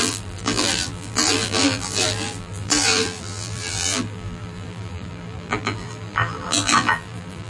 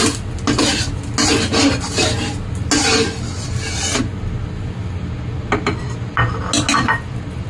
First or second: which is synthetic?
first